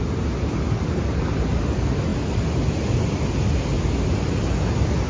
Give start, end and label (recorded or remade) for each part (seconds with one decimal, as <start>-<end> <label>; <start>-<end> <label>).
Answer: 0.0-5.1 recorded